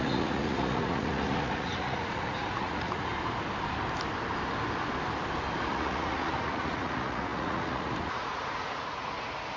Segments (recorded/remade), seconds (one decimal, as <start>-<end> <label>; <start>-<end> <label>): 0.0-3.1 remade; 3.1-5.7 recorded; 5.7-9.6 remade

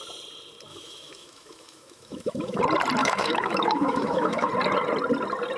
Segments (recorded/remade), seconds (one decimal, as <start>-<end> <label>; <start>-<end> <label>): 0.0-0.7 recorded; 0.7-2.6 remade; 2.6-3.0 recorded; 3.0-4.5 remade; 4.5-5.6 recorded

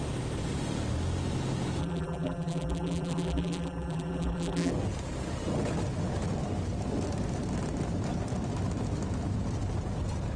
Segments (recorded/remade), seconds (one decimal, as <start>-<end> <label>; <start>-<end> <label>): 0.0-1.8 recorded; 1.8-4.7 remade; 4.7-10.4 recorded

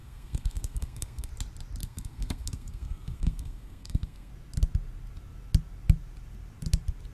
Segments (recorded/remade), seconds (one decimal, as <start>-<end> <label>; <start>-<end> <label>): 0.0-1.3 remade; 1.3-1.8 recorded; 1.8-4.3 remade; 4.3-7.1 recorded

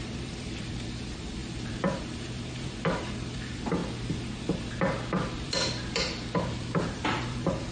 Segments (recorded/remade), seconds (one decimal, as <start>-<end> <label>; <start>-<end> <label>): 0.0-3.8 remade; 3.8-5.3 recorded; 5.3-7.7 remade

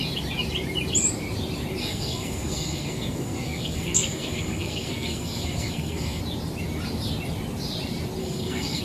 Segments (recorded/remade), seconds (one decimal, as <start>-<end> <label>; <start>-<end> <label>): 0.0-1.8 recorded; 1.8-6.2 remade; 6.2-8.2 recorded; 8.2-8.8 remade